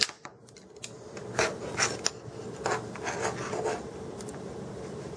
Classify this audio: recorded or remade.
recorded